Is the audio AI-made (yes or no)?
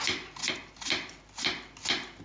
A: no